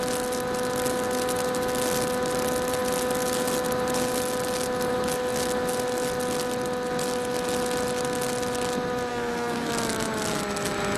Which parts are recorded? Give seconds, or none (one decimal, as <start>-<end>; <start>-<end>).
0.0-9.1; 9.7-11.0